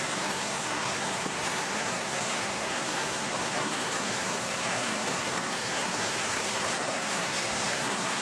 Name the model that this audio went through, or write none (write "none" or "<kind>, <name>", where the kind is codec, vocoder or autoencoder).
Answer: codec, SNAC